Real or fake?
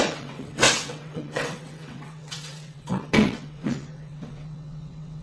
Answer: fake